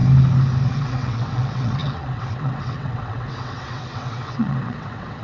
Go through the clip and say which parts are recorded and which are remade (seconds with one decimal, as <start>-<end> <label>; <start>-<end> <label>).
0.0-0.7 recorded; 0.7-5.2 remade